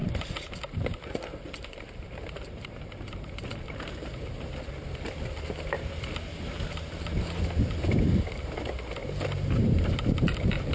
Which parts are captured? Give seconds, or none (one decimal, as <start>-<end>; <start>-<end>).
4.7-6.3; 6.9-9.0